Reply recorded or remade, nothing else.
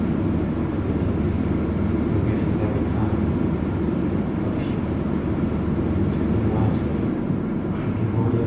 recorded